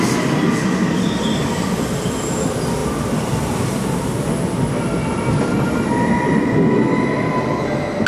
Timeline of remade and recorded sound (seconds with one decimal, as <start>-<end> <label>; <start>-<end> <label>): 0.0-8.1 recorded